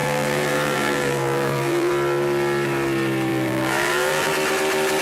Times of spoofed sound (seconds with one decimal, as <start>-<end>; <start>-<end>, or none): 0.0-1.9; 3.3-4.3